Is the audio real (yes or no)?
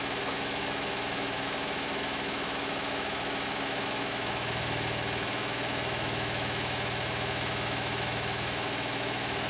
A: no